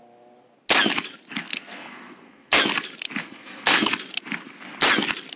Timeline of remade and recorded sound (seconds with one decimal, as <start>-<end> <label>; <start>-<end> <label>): 0.0-1.5 recorded; 1.5-2.6 remade; 2.6-3.2 recorded; 3.2-3.9 remade; 3.9-5.4 recorded